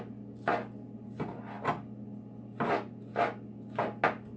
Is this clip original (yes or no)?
yes